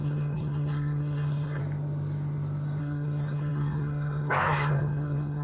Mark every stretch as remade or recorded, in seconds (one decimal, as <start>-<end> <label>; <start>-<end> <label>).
0.0-1.6 remade; 1.6-2.8 recorded; 2.8-5.4 remade